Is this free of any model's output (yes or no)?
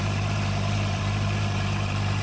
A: no